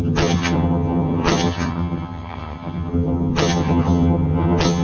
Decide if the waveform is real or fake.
fake